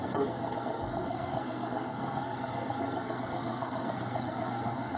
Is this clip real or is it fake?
fake